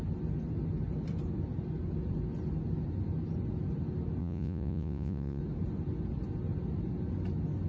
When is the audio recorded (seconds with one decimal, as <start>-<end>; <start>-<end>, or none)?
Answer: 0.0-4.2; 5.4-7.7